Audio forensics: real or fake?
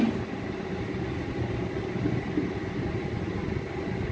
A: real